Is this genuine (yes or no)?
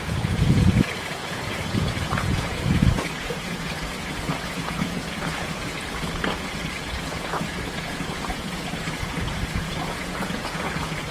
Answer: no